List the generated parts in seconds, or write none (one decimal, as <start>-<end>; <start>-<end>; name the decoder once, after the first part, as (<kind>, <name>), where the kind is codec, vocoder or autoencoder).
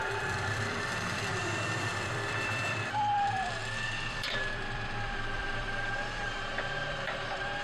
0.0-1.3 (vocoder, BigVGAN v2); 1.8-3.6; 4.1-7.6